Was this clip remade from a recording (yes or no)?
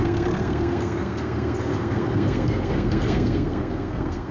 yes